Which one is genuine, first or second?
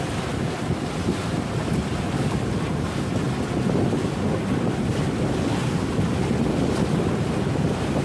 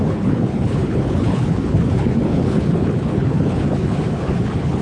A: first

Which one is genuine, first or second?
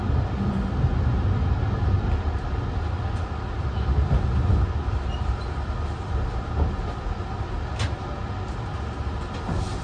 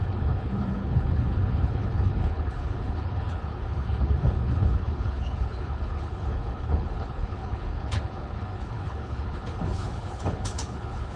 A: first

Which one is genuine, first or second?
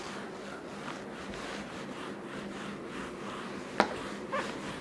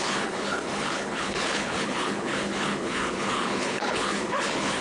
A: first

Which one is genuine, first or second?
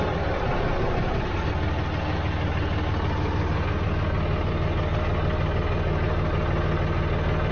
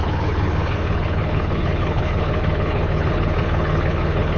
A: first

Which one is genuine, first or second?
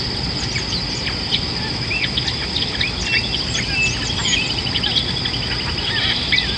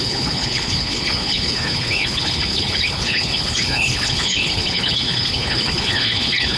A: first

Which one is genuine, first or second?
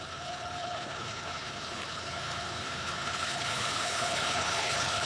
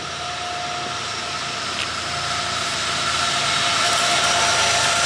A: second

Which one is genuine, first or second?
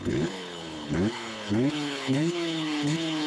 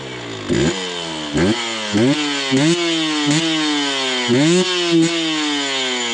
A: second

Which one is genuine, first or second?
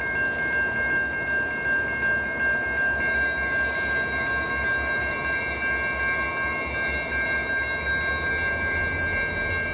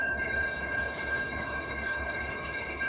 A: first